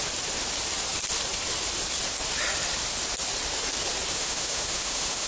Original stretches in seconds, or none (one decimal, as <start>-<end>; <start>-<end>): 0.0-4.1